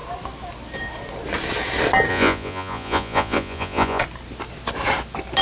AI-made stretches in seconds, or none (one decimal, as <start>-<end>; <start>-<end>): 2.1-4.0